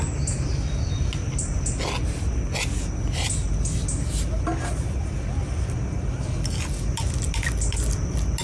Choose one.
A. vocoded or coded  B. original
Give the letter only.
B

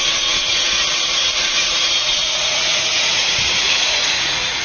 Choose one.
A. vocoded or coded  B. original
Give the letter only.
A